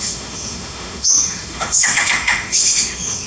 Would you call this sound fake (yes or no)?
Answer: yes